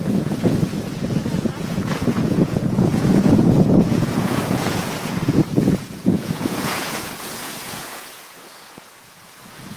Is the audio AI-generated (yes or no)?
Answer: yes